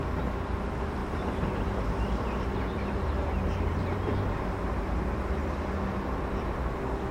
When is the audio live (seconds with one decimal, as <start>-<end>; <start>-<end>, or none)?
0.0-1.0; 5.0-7.1

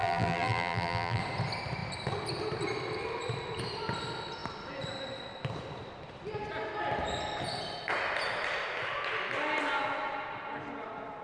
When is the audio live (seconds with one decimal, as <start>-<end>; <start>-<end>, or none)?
1.2-11.2

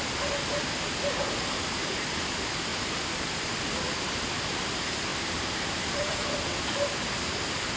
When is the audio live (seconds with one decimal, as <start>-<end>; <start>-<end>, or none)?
0.0-0.5; 1.0-2.7; 3.5-5.1; 6.3-7.8

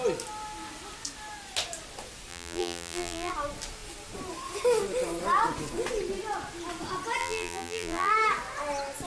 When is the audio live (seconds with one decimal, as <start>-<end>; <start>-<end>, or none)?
0.0-2.3; 3.3-7.2; 8.1-9.1

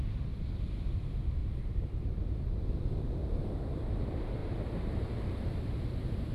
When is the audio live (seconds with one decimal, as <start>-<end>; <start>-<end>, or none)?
0.0-1.4; 2.0-4.4; 5.5-6.3

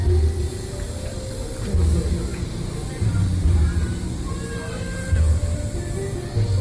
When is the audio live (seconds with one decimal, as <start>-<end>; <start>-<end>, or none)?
0.0-2.3; 6.0-6.6

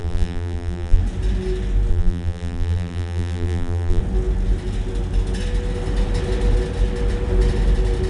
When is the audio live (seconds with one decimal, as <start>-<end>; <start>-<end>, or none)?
1.0-1.9; 4.0-8.1